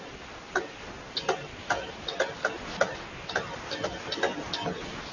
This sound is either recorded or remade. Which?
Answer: recorded